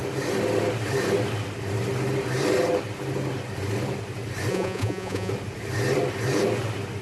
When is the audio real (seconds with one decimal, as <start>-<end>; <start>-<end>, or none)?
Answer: 0.0-4.5; 5.3-7.0

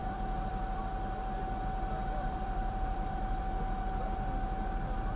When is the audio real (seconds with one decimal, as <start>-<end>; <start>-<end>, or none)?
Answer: 0.8-2.0; 3.4-5.2

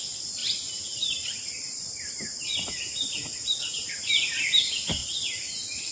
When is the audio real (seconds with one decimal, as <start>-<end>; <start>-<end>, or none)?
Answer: 0.0-0.4; 3.9-5.9

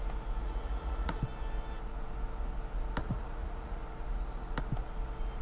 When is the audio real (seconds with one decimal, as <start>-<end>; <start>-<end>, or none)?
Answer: 0.0-0.4; 1.2-3.0; 3.8-5.4

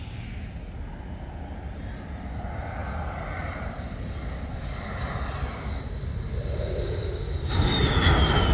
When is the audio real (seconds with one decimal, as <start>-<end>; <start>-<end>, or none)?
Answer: 0.0-8.5